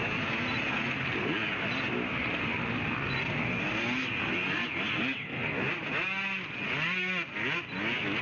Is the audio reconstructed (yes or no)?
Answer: no